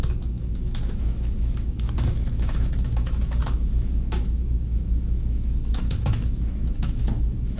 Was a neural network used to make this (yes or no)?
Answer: yes